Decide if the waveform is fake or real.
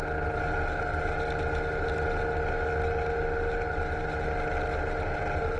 real